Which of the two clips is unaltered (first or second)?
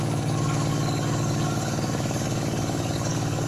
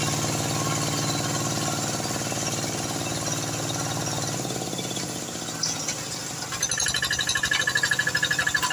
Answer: second